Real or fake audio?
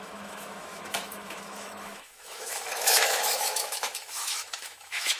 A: fake